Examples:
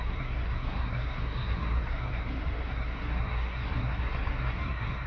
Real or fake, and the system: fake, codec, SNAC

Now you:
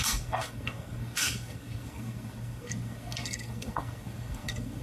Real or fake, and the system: fake, codec, SNAC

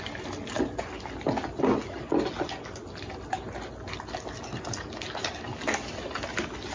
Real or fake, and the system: real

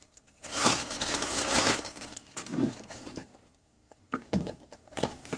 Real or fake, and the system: fake, codec, SNAC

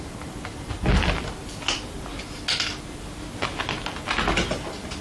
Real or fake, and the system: real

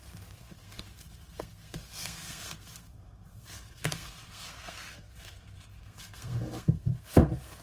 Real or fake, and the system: fake, codec, SNAC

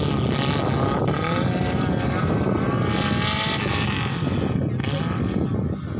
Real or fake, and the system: real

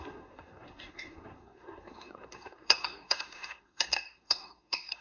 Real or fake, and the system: fake, codec, SNAC